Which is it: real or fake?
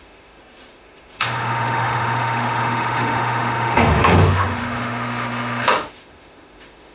fake